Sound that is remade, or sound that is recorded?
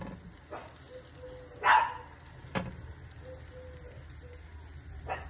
recorded